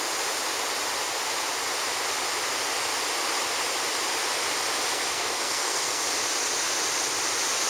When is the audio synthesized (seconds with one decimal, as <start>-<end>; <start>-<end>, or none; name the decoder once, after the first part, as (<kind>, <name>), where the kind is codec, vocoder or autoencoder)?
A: 4.9-6.0 (codec, SNAC)